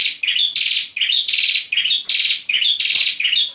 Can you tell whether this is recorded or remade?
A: recorded